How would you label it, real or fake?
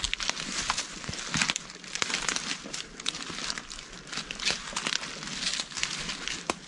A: real